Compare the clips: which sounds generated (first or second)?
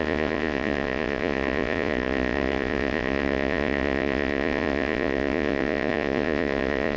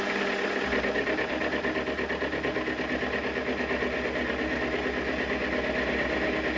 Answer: first